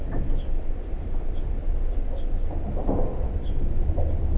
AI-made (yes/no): no